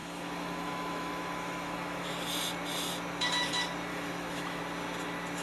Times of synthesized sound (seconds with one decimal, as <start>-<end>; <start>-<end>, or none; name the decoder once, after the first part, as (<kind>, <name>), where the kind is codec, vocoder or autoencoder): 0.0-2.1 (autoencoder, DAC-VAE); 3.9-4.6